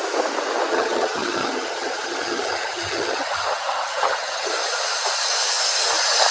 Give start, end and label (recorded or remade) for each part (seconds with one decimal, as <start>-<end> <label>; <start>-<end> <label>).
0.0-0.7 recorded; 0.7-4.5 remade; 4.5-6.3 recorded